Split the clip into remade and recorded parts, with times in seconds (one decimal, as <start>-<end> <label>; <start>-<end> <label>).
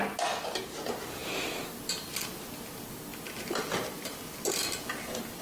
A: 0.0-5.4 recorded